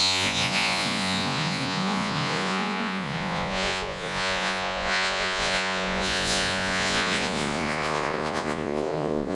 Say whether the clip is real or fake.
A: fake